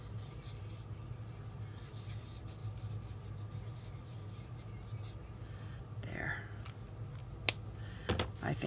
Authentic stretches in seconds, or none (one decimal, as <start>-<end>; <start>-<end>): 0.0-8.7